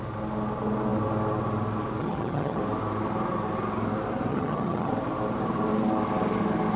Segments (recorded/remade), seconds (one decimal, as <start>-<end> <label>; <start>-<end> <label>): 0.0-2.0 recorded; 2.0-2.6 remade; 2.6-4.3 recorded; 4.3-4.9 remade; 4.9-6.8 recorded